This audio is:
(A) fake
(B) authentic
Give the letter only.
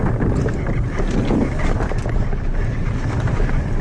B